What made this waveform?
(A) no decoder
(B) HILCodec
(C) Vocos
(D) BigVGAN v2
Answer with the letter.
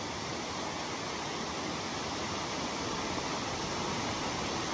A